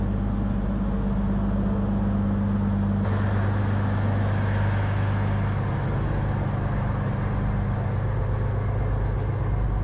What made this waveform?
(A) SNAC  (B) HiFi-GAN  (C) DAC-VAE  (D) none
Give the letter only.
D